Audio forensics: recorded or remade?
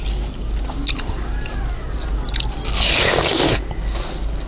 recorded